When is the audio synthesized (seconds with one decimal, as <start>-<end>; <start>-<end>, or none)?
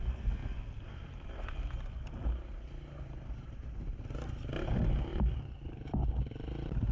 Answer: 0.4-1.3; 5.1-6.1